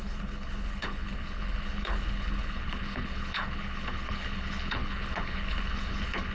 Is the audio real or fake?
fake